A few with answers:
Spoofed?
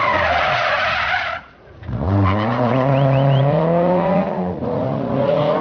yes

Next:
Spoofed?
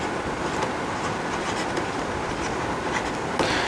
no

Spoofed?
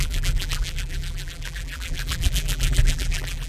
yes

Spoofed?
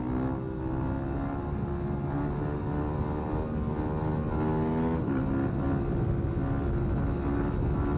no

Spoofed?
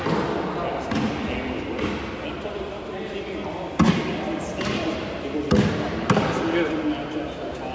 no